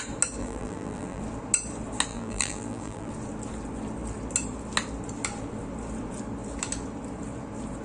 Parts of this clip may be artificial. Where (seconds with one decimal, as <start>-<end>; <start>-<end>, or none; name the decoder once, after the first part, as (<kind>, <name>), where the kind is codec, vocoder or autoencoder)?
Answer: 0.4-1.2 (vocoder, BigVGAN v2); 2.1-3.1